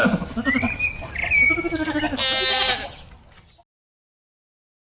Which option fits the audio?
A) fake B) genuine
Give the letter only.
B